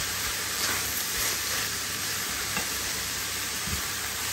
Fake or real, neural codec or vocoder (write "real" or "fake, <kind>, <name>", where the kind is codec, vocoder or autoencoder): fake, vocoder, BigVGAN v2